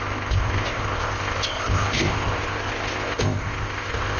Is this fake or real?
fake